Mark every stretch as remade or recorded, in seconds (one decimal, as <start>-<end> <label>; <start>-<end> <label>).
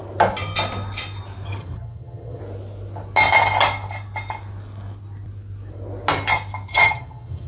0.0-1.6 recorded; 1.6-2.4 remade; 2.4-6.7 recorded; 6.7-7.5 remade